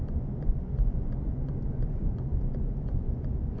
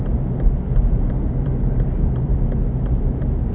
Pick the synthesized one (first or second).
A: first